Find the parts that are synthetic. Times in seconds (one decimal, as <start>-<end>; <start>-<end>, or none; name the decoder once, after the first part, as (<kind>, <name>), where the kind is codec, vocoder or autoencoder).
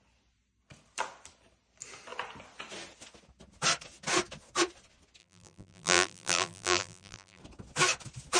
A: 5.2-7.4 (vocoder, BigVGAN v2)